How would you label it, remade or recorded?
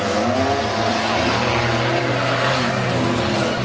recorded